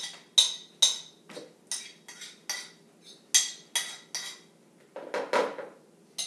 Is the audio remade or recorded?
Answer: recorded